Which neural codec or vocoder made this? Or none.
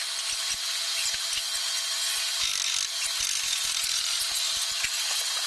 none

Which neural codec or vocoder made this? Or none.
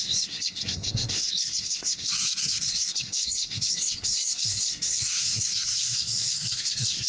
codec, SNAC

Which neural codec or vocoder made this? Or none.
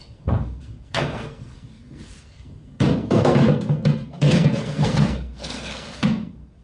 codec, SNAC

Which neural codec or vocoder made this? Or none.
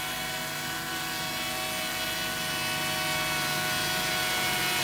none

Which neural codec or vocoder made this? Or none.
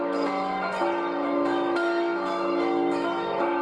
autoencoder, DAC-VAE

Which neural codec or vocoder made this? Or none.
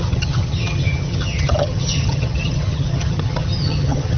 vocoder, HiFi-GAN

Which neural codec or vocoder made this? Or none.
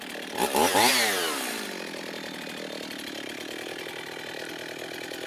none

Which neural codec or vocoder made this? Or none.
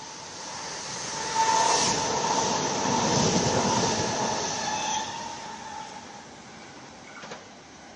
none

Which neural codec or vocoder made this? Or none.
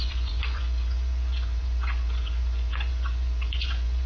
vocoder, Vocos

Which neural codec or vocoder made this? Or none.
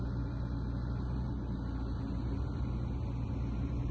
none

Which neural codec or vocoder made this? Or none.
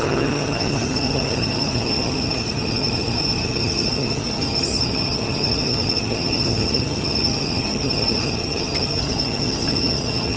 vocoder, HiFi-GAN